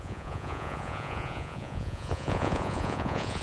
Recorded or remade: remade